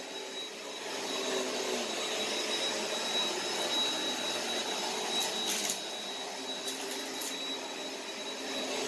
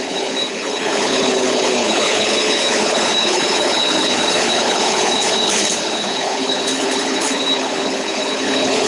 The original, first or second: first